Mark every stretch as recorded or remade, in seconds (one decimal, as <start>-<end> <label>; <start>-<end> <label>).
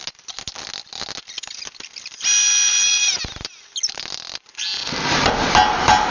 0.0-6.1 recorded